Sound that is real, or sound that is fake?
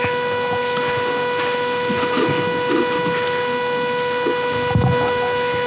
real